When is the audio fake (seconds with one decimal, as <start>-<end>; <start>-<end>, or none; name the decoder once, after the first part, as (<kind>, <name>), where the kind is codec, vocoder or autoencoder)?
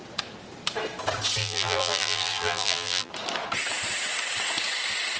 1.4-3.1 (vocoder, BigVGAN v2)